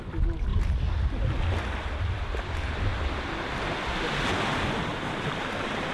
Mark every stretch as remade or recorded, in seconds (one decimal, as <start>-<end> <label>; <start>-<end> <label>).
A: 0.0-2.9 recorded; 2.9-3.6 remade; 3.6-4.9 recorded; 4.9-5.9 remade